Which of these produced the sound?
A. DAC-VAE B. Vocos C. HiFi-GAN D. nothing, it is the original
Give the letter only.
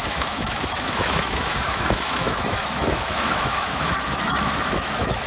A